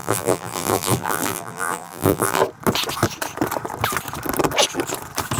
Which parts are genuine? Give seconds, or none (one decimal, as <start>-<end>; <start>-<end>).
2.4-5.4